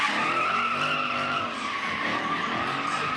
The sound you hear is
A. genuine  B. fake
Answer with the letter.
A